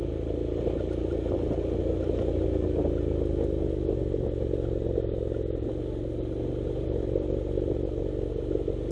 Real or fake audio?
real